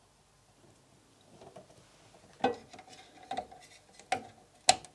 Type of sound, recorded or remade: recorded